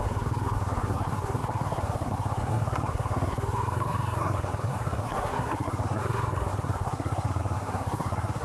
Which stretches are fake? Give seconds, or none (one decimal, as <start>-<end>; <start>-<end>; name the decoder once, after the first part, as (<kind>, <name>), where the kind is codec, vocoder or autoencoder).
0.0-8.4 (codec, SNAC)